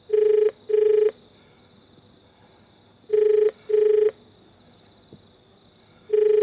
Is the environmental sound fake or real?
real